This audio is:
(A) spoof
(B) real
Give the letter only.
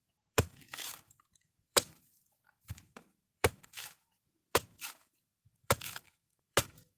A